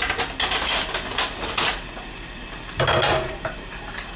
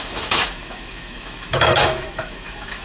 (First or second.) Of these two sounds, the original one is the first